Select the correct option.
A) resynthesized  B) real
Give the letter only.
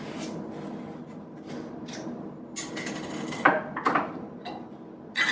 B